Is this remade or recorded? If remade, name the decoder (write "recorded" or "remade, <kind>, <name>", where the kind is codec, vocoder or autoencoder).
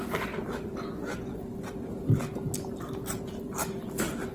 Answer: recorded